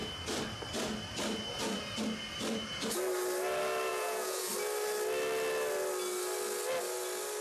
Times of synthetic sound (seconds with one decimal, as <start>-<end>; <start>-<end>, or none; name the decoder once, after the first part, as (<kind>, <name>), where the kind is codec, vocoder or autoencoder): 3.9-4.5 (vocoder, Vocos)